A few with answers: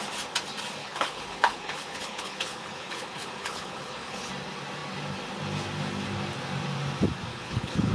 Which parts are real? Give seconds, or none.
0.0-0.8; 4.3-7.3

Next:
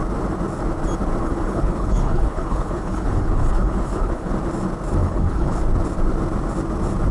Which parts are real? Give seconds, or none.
0.0-1.2; 4.3-5.0; 5.6-7.1

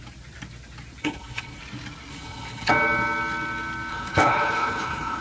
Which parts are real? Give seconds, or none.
0.0-1.0; 1.6-2.1; 2.7-3.9

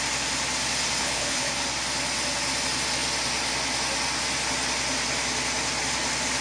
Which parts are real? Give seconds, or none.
0.0-1.0; 1.5-6.4

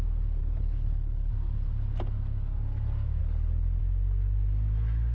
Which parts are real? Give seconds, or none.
0.0-0.4; 1.3-3.2; 3.8-5.1

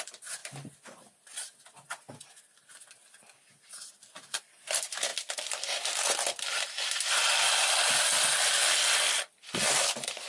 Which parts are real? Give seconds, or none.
0.0-10.3